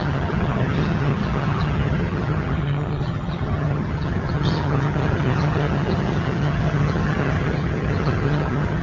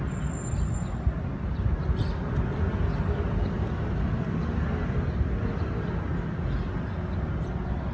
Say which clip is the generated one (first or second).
first